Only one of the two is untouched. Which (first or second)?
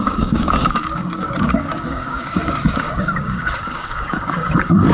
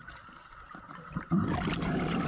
second